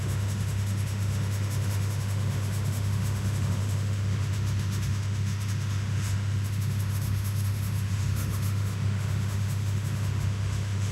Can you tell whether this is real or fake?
fake